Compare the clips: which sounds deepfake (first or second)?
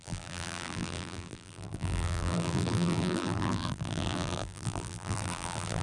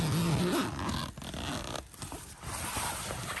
first